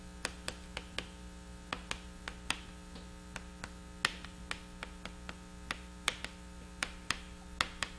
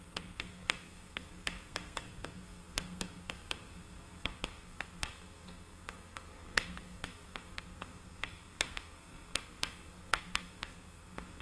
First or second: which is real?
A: first